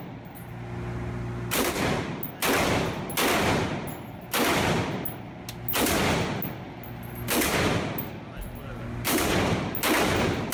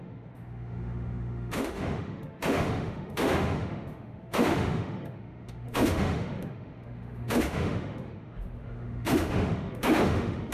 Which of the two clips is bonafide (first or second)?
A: first